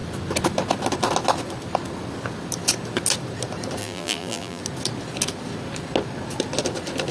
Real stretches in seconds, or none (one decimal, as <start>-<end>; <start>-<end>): 0.0-3.8; 4.6-7.1